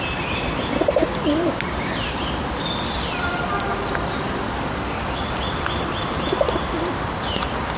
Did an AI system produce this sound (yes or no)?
yes